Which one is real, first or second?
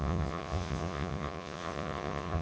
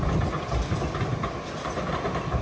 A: second